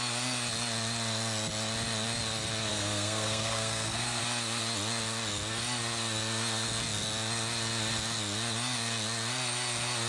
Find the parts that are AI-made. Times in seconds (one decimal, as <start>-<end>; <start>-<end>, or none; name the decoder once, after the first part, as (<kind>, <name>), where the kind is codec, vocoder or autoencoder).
2.7-4.2 (codec, SNAC)

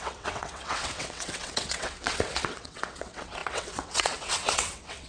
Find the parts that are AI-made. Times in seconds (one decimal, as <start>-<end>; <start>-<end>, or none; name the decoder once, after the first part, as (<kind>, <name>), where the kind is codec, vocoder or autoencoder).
0.0-5.1 (vocoder, WaveNeXt)

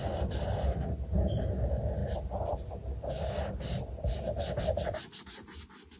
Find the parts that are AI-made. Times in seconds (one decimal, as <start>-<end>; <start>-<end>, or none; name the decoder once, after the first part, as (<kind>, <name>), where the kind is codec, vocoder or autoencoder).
none